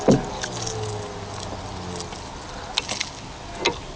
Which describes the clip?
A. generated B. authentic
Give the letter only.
B